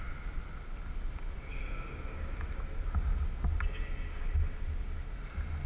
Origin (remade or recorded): recorded